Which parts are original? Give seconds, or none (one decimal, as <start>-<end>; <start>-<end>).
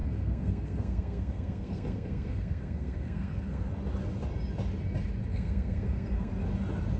3.7-5.3; 6.3-7.0